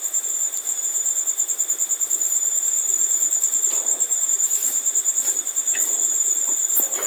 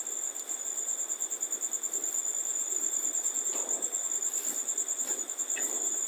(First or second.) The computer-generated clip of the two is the first